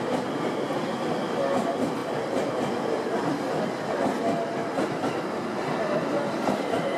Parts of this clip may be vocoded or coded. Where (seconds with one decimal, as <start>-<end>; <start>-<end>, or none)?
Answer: none